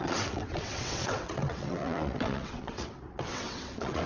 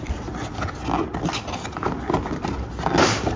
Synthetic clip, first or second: first